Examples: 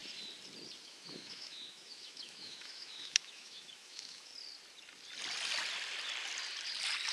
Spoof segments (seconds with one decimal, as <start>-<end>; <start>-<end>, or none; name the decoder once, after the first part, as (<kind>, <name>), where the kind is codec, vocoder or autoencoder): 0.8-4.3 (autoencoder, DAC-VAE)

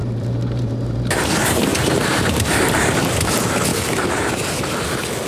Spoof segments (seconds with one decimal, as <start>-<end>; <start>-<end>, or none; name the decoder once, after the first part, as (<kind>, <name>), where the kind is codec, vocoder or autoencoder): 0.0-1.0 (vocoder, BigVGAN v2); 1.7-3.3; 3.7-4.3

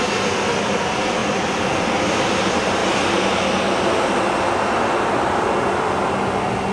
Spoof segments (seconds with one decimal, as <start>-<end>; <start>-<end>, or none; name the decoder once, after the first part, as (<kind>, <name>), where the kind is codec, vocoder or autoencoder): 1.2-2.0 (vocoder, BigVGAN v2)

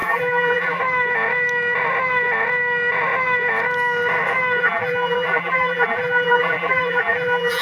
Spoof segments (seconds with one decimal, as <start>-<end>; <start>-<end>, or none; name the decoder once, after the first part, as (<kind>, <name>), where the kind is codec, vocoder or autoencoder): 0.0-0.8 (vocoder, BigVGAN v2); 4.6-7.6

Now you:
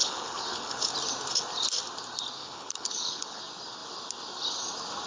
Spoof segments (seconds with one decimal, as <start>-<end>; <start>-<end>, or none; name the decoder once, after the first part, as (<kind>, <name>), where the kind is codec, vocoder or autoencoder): 0.0-0.9 (codec, HILCodec); 2.4-3.4

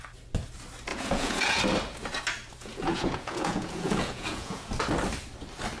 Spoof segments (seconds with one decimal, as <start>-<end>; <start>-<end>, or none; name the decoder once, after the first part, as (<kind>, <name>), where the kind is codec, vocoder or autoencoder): 0.9-1.6 (vocoder, Vocos); 2.6-4.7

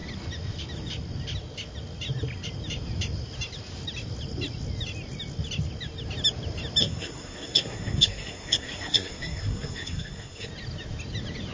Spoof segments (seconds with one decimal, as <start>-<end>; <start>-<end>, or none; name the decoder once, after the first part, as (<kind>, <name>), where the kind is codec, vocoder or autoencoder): 6.8-10.5 (codec, SNAC)

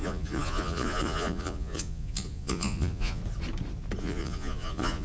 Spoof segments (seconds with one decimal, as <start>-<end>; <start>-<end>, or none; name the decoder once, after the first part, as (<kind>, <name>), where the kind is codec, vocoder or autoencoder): 0.0-3.2 (vocoder, Vocos); 4.0-5.0